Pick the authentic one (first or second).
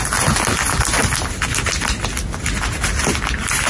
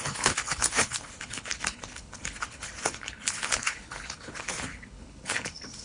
first